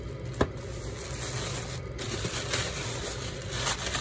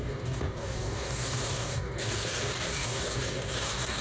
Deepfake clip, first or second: second